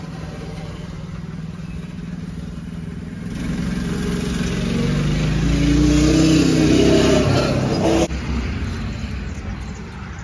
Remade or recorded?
recorded